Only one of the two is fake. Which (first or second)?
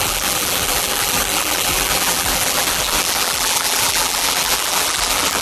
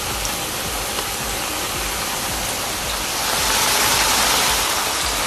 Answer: first